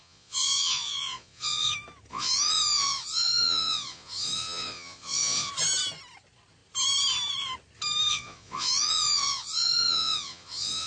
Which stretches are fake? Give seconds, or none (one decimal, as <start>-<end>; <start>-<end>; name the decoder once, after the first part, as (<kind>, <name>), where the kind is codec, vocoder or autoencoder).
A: 0.0-1.7 (vocoder, Vocos); 2.1-5.5; 8.1-10.9

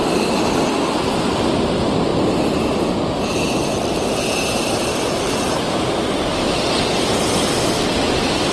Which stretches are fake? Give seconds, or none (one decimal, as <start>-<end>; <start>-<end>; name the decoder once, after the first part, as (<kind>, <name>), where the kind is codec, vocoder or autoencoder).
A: none